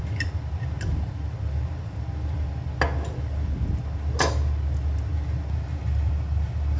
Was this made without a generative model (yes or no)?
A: yes